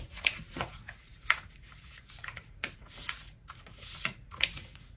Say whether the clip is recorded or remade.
remade